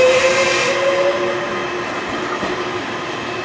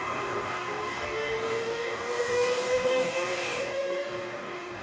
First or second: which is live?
first